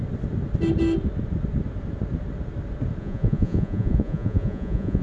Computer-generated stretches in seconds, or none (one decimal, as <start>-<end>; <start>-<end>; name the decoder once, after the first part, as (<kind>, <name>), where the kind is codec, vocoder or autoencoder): 3.0-5.0 (vocoder, Vocos)